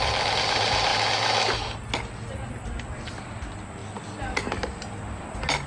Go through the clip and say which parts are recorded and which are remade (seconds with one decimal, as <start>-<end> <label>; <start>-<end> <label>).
0.0-5.7 recorded